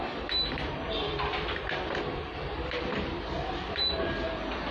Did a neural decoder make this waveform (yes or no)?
yes